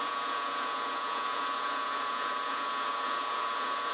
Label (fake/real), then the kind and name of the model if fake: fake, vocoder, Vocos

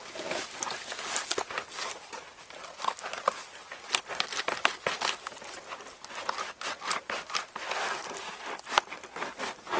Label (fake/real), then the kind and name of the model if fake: real